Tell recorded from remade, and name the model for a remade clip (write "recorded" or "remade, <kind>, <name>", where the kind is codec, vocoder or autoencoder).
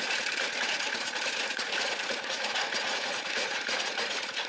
remade, vocoder, Vocos